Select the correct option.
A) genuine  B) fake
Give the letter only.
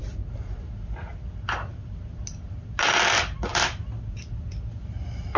A